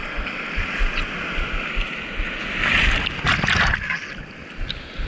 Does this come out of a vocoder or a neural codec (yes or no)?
no